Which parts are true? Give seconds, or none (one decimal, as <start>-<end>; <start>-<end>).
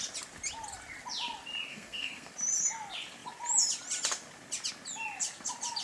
0.0-1.7; 2.3-5.8